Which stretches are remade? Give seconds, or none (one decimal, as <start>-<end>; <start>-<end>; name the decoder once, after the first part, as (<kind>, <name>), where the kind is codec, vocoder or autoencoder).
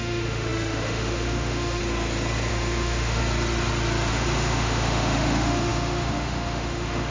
0.0-1.8 (autoencoder, DAC-VAE); 2.5-3.2; 4.1-7.1